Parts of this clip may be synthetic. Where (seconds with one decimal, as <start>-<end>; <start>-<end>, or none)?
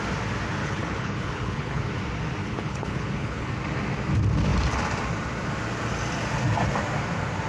0.6-1.8; 2.4-3.5